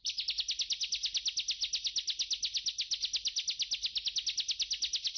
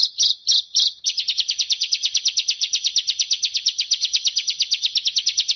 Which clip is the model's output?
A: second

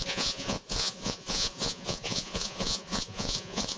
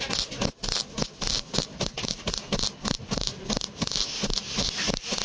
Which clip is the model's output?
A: first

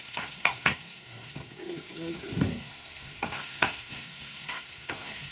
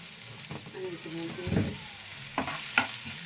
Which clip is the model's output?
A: first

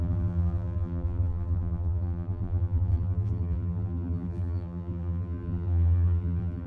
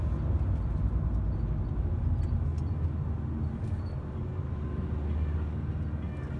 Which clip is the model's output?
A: first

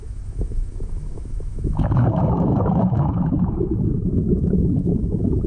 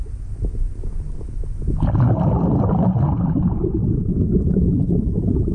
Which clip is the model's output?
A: first